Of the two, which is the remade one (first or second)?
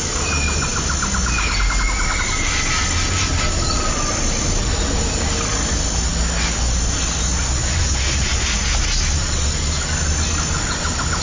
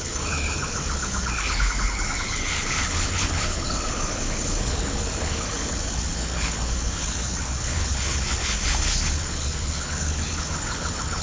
second